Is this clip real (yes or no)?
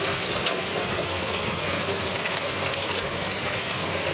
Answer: no